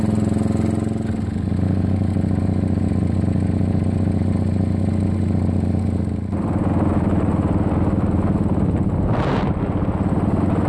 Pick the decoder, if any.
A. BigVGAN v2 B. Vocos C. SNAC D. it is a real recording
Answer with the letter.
D